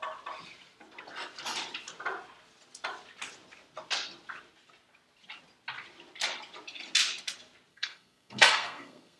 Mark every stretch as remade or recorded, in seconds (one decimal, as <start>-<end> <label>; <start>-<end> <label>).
0.0-7.7 recorded; 7.7-9.2 remade